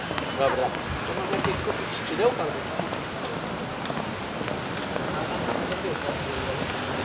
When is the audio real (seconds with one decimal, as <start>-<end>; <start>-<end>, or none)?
0.0-5.5; 6.1-7.0